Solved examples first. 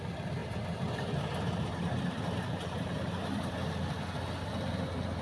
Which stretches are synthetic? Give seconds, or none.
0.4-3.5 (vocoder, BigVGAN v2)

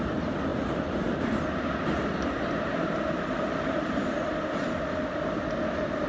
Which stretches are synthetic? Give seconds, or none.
0.5-1.2 (vocoder, BigVGAN v2)

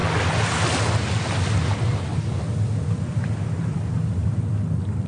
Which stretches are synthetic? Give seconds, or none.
none

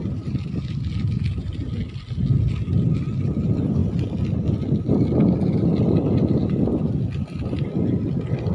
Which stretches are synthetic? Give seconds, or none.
none

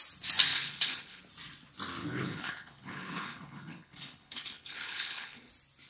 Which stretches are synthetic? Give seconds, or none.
0.5-1.2 (codec, HILCodec); 2.0-5.5

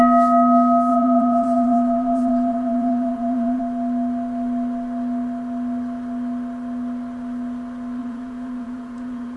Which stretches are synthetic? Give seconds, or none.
0.9-3.6 (vocoder, Vocos); 8.0-9.4

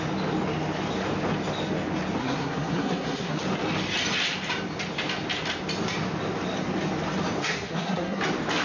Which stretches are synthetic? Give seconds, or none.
2.2-3.4 (codec, SNAC); 7.4-8.2